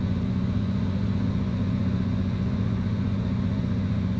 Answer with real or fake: fake